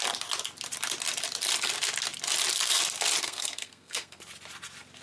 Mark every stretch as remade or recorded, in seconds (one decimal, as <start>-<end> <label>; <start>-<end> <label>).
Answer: 0.0-3.2 recorded; 3.2-4.2 remade; 4.2-5.0 recorded